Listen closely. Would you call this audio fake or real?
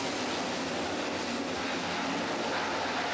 real